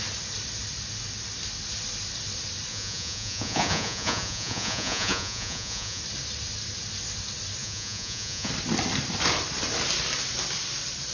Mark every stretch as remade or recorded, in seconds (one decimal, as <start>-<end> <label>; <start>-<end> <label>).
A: 0.0-2.7 recorded; 2.7-6.0 remade; 6.0-7.6 recorded; 7.6-8.5 remade; 8.5-11.1 recorded